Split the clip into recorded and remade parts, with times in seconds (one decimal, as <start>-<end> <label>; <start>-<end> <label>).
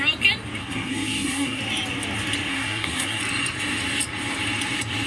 0.0-0.6 recorded; 0.6-1.6 remade; 1.6-2.5 recorded; 2.5-3.2 remade; 3.2-5.1 recorded